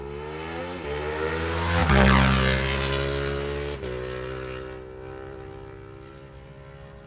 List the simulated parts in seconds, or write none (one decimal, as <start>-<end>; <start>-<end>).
none